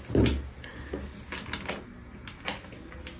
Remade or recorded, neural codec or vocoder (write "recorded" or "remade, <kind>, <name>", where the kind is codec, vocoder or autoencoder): recorded